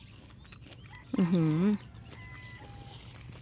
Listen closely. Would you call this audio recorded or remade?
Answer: recorded